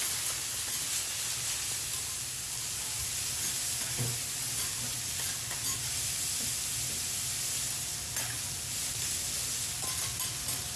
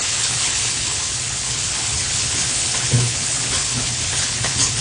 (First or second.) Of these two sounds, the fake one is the second